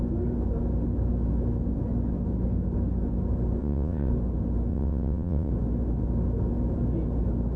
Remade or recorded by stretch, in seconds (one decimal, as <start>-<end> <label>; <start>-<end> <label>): 0.0-3.6 recorded; 3.6-4.1 remade; 4.1-4.7 recorded; 4.7-5.5 remade; 5.5-7.6 recorded